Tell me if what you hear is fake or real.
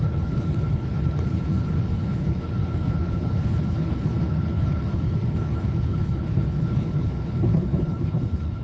fake